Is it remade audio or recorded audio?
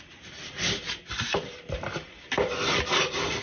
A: recorded